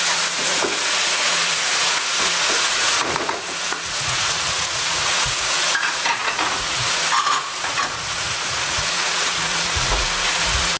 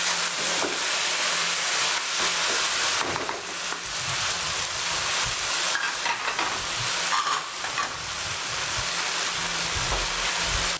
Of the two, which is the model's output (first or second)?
first